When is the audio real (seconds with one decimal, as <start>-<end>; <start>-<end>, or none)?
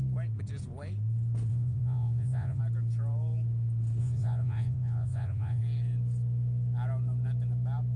0.0-1.5; 2.6-4.0; 5.6-8.0